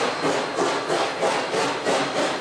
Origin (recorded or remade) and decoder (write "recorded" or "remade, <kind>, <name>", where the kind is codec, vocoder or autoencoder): recorded